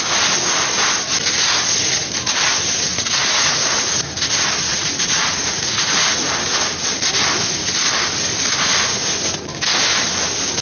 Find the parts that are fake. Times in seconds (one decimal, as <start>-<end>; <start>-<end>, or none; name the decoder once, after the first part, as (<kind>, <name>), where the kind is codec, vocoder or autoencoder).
2.9-4.1 (vocoder, Vocos); 4.7-6.2